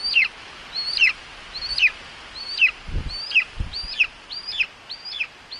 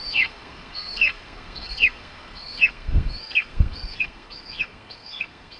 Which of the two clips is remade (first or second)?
second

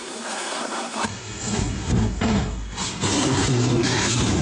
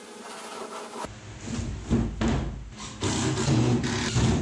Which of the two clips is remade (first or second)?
first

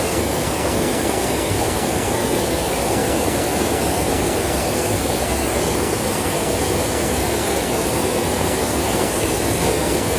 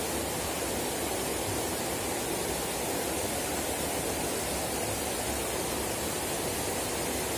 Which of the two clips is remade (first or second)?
first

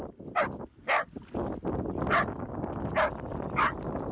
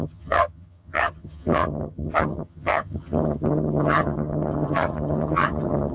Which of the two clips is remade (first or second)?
second